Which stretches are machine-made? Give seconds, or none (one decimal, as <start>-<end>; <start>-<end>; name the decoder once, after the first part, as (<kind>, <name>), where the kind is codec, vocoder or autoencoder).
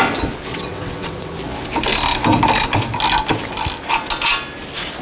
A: 0.5-1.3 (vocoder, WaveNeXt)